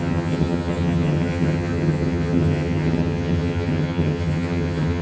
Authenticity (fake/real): fake